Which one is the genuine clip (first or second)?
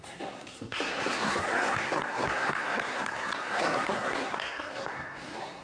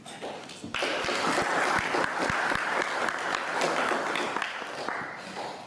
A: second